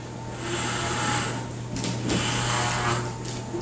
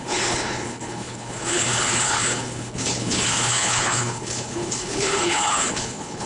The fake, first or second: second